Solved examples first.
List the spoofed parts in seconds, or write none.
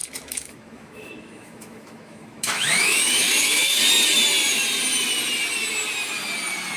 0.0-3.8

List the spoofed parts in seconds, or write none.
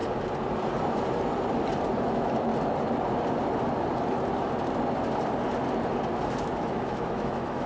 2.0-2.5; 6.3-7.7